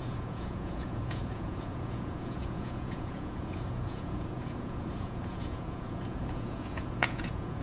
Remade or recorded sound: remade